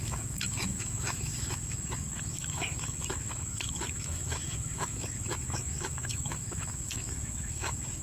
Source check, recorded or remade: remade